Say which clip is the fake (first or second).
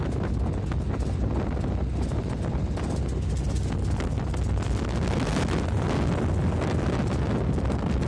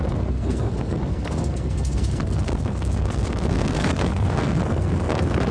second